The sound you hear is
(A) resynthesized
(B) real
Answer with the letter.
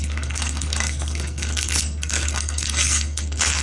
A